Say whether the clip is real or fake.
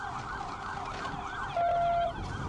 real